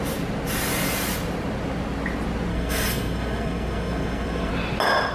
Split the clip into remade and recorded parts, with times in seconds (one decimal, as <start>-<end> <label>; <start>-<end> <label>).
0.0-2.5 recorded; 2.5-4.5 remade; 4.5-5.1 recorded